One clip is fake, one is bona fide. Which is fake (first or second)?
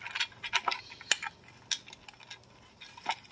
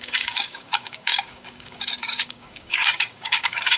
second